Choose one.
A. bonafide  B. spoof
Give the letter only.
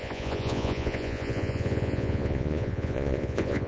B